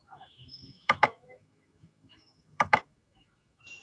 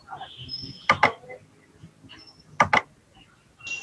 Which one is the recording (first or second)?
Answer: second